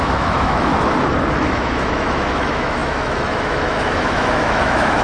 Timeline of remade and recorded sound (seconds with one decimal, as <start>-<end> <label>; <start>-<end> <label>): 0.0-0.7 remade; 0.7-1.3 recorded; 1.3-5.0 remade

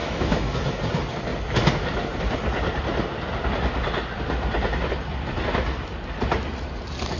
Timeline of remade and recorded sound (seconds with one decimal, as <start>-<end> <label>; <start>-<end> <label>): 0.0-0.8 remade; 0.8-7.2 recorded

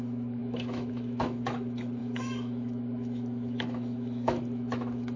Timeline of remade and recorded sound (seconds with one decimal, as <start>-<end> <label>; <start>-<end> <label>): 0.0-5.2 remade

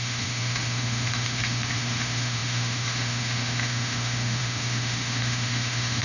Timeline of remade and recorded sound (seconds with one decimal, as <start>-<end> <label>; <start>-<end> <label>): 0.0-6.0 remade

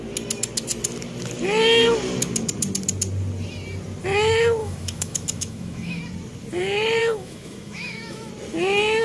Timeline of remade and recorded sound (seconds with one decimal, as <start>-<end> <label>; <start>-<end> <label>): 0.0-4.6 recorded; 4.6-6.0 remade; 6.0-7.0 recorded; 7.0-8.3 remade; 8.3-9.0 recorded

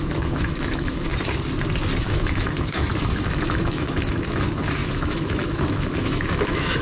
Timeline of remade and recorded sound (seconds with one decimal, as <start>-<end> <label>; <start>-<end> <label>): 0.0-1.1 remade; 1.1-2.0 recorded; 2.0-6.8 remade

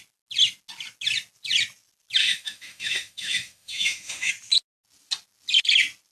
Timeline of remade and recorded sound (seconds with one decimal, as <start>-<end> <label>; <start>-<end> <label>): 0.0-2.2 recorded; 2.2-4.3 remade; 4.3-6.1 recorded